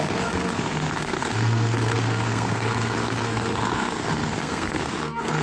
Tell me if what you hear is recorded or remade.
remade